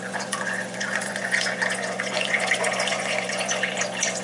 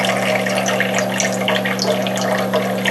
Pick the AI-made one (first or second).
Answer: first